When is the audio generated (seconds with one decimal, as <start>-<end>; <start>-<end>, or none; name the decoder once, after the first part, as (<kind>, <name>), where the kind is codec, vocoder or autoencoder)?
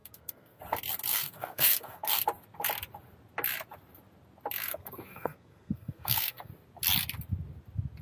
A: 0.0-0.6 (codec, SNAC); 1.1-2.2; 4.7-6.5